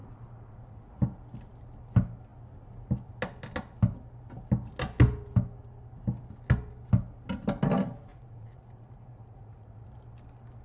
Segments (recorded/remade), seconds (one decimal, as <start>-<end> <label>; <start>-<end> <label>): 0.0-0.9 remade; 0.9-8.1 recorded; 8.1-9.9 remade; 9.9-10.6 recorded